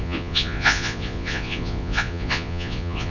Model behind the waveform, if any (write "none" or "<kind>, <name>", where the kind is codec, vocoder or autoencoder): vocoder, Vocos